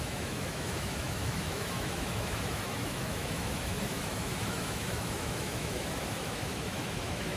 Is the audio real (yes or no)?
no